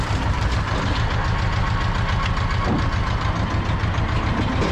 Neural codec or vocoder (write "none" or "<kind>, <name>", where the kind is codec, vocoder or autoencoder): none